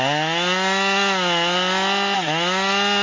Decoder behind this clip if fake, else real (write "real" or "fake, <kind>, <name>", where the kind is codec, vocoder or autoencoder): real